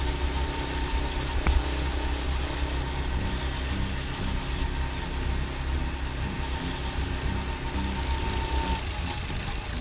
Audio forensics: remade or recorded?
recorded